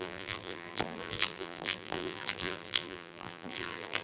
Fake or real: fake